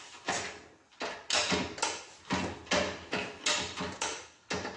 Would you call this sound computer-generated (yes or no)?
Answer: no